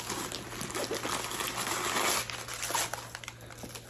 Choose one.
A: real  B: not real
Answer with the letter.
A